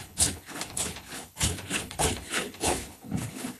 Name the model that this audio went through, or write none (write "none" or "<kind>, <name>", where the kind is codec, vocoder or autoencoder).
codec, HILCodec